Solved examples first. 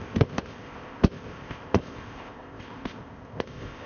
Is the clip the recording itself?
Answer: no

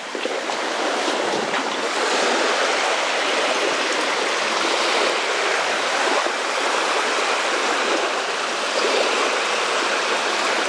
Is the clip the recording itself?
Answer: yes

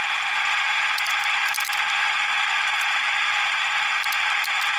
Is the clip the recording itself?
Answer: no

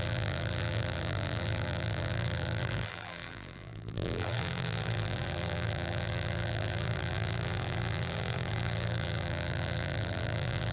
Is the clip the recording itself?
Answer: no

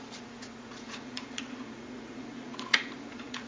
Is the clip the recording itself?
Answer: no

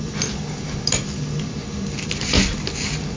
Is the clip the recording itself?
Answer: yes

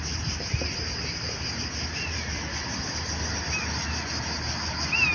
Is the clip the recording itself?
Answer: yes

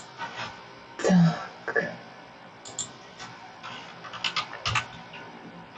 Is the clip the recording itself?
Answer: yes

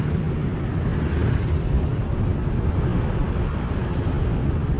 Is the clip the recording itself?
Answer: yes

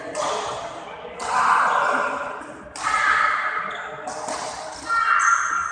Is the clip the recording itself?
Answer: yes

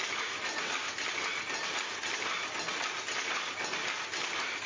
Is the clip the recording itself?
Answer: yes